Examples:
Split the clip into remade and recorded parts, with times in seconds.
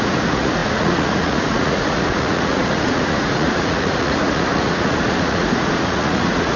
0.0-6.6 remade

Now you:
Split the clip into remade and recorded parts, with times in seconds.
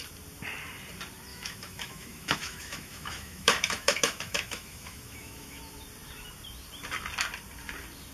0.0-1.3 recorded; 1.3-5.6 remade; 5.6-8.1 recorded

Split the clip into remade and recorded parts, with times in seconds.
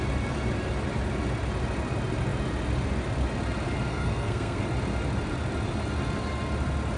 0.0-3.9 recorded; 3.9-4.6 remade; 4.6-7.0 recorded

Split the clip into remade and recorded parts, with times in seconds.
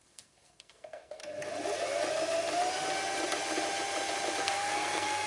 0.0-1.2 remade; 1.2-4.4 recorded; 4.4-5.3 remade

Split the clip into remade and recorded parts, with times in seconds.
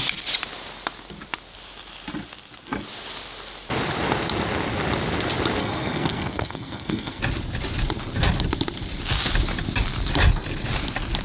0.0-5.6 recorded; 5.6-7.2 remade; 7.2-11.2 recorded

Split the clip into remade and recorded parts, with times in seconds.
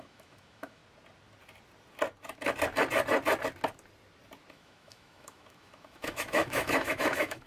0.0-0.8 remade; 0.8-4.5 recorded; 4.5-7.5 remade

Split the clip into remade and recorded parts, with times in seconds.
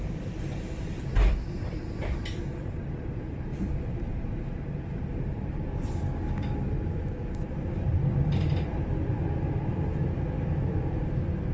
0.0-3.5 remade; 3.5-5.2 recorded; 5.2-11.5 remade